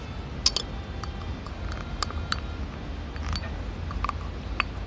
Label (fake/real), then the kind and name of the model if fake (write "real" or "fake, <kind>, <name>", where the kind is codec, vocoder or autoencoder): real